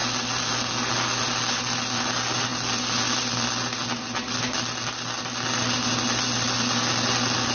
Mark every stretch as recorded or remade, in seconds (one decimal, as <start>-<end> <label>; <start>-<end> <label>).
0.0-7.5 recorded